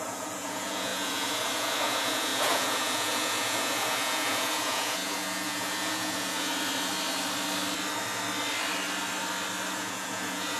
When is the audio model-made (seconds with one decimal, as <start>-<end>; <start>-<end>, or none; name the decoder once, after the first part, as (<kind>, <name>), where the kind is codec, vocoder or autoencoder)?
0.0-6.5 (vocoder, Vocos); 9.7-10.6